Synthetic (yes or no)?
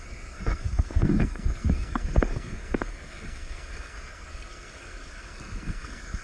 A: yes